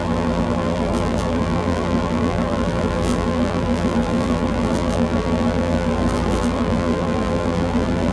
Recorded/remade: remade